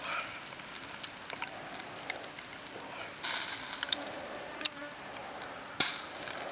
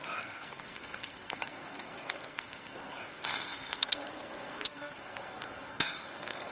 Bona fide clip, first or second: first